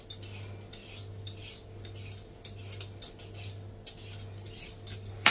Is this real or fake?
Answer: real